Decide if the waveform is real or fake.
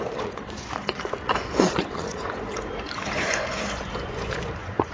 fake